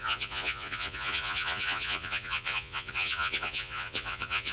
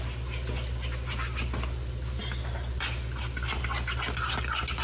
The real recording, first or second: second